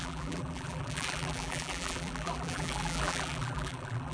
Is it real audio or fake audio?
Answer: fake